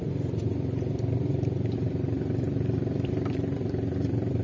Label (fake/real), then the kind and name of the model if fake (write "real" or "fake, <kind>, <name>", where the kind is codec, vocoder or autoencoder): fake, vocoder, BigVGAN v2